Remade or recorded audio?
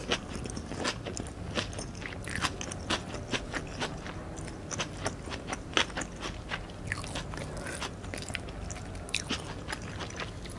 recorded